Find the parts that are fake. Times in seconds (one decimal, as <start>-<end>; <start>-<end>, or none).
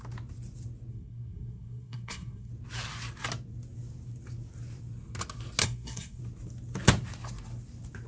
0.9-2.5; 5.6-6.2